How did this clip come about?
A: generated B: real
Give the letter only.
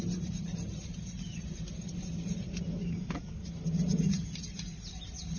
A